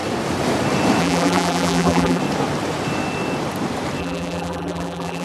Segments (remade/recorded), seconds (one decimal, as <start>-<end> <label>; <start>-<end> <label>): 0.0-1.0 recorded; 1.0-2.2 remade; 2.2-4.0 recorded; 4.0-5.2 remade